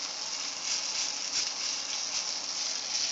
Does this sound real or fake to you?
real